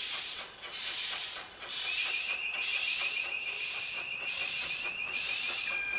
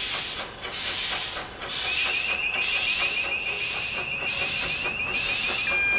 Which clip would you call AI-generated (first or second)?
first